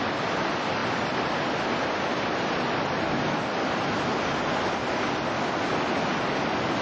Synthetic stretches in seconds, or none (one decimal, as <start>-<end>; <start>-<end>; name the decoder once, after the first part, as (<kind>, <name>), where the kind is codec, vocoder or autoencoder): none